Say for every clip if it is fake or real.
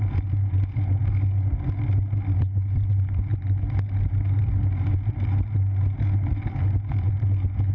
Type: real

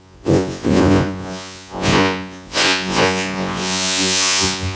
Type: fake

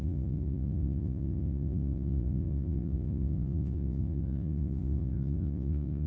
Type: fake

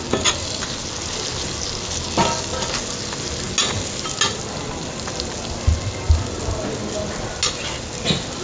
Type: real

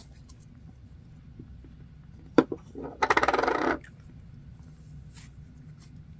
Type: real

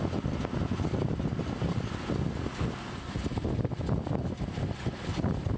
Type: real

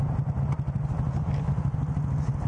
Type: real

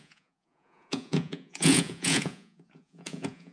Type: fake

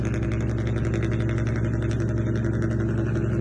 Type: real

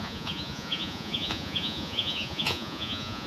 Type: fake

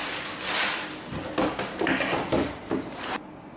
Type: real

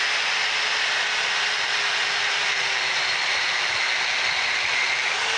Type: real